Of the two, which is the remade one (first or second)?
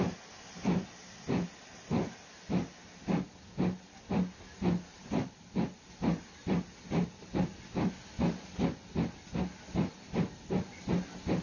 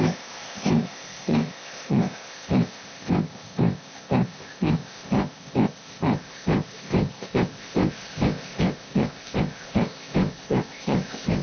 second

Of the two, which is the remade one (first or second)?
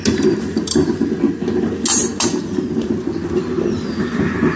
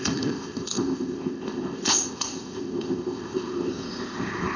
second